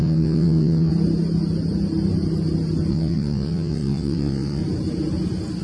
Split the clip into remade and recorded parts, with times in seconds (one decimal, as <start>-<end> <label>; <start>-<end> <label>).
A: 0.0-0.9 remade; 0.9-2.9 recorded; 2.9-4.6 remade; 4.6-5.6 recorded